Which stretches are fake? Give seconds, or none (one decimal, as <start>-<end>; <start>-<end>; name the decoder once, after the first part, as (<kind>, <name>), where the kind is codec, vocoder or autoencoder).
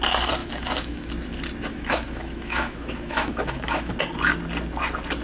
0.4-1.1 (autoencoder, DAC-VAE); 1.7-3.9